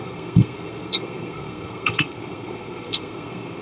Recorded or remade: remade